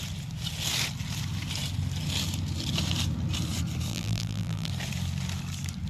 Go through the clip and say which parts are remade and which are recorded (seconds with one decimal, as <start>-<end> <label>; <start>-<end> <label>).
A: 0.0-3.9 recorded; 3.9-4.7 remade; 4.7-5.9 recorded